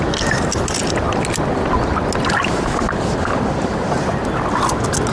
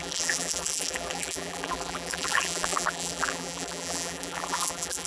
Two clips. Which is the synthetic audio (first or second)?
second